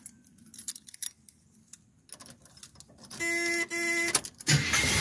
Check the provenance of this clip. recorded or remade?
recorded